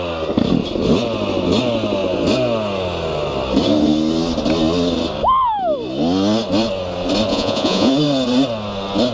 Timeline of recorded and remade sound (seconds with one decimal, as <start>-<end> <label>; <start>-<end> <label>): 0.0-7.3 recorded; 7.3-7.9 remade; 7.9-9.1 recorded